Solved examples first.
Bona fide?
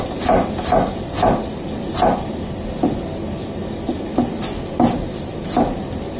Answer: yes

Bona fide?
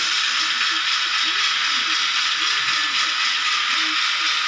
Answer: yes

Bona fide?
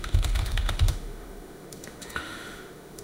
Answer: no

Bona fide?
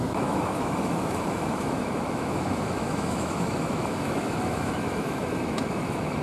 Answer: no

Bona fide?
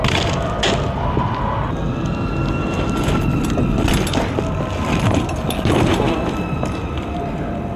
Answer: yes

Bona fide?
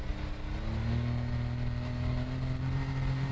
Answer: yes